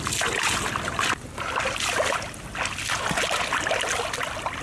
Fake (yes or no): no